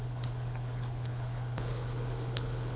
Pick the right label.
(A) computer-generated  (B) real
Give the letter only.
A